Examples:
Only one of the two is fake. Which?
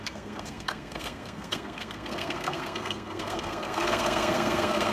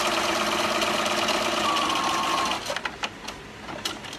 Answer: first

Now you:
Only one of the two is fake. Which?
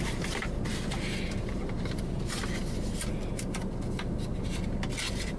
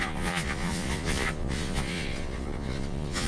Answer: second